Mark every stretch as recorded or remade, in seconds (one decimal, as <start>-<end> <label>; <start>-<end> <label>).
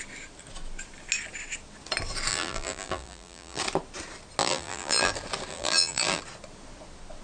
0.0-2.3 recorded; 2.3-3.6 remade; 3.6-4.4 recorded; 4.4-5.1 remade; 5.1-5.5 recorded; 5.5-6.2 remade; 6.2-7.2 recorded